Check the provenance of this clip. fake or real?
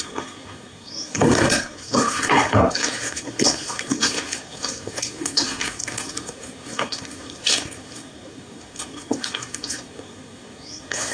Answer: fake